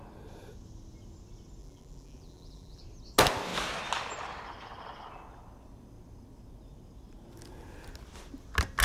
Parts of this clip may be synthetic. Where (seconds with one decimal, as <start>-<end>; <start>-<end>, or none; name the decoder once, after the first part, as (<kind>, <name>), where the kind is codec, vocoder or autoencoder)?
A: 1.6-2.8 (vocoder, BigVGAN v2)